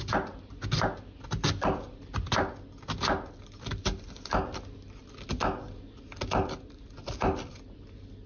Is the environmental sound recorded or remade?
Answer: recorded